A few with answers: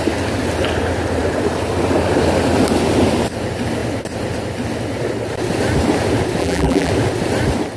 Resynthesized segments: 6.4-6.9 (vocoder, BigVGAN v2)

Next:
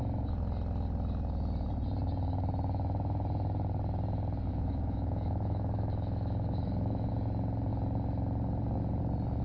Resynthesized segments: 4.5-7.1 (autoencoder, DAC-VAE)